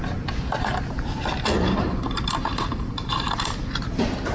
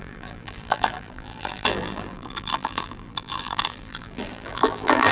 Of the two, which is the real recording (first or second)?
first